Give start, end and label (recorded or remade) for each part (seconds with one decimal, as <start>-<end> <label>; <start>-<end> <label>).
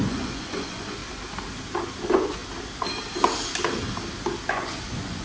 0.0-1.0 remade; 1.0-2.0 recorded; 2.0-2.4 remade; 2.4-4.5 recorded; 4.5-5.2 remade